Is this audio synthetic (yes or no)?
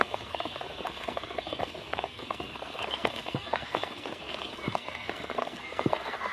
yes